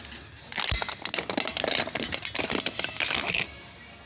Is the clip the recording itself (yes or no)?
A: yes